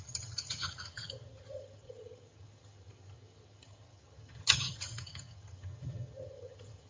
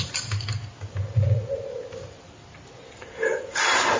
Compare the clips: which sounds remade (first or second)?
first